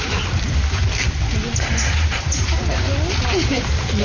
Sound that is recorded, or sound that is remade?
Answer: recorded